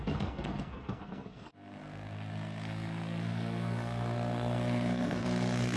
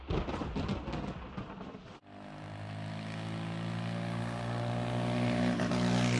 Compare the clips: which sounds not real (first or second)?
first